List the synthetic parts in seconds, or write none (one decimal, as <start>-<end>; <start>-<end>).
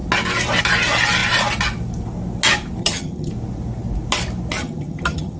2.8-3.3; 4.6-5.4